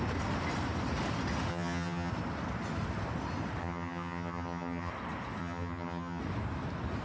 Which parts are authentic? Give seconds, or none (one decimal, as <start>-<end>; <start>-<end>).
0.0-1.5; 2.1-3.6; 4.9-5.4; 6.2-7.0